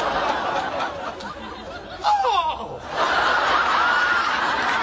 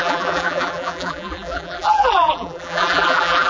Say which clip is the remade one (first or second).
second